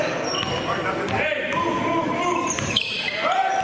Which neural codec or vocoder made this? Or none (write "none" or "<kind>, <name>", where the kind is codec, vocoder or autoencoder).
none